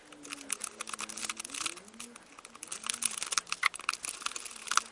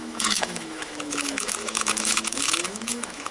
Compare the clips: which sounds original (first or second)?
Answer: first